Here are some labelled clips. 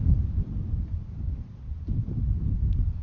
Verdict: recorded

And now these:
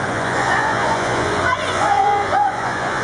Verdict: remade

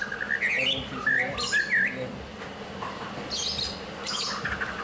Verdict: recorded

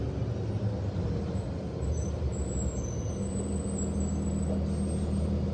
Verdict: recorded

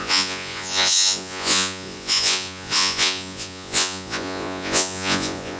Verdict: remade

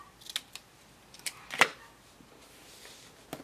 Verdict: recorded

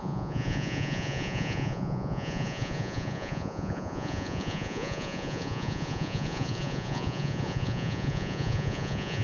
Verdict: remade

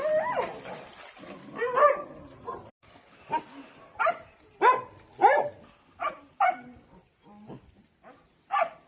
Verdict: recorded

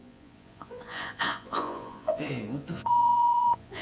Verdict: remade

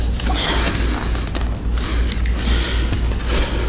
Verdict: recorded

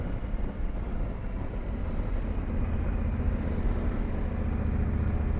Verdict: recorded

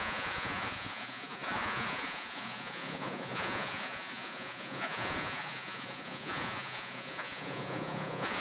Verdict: remade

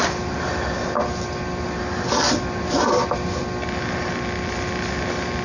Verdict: recorded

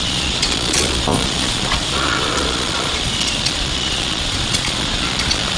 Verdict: remade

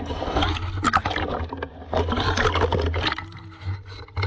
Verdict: recorded